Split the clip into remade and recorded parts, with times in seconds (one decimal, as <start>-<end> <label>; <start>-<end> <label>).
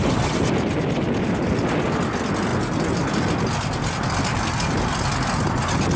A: 0.0-6.0 recorded